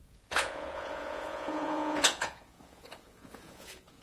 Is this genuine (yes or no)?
no